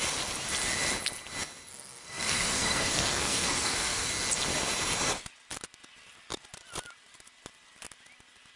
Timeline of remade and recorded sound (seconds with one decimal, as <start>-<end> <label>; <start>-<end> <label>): 0.0-1.7 recorded; 1.7-4.1 remade; 4.1-8.6 recorded